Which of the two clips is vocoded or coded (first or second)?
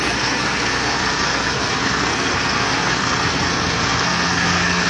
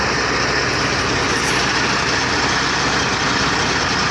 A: first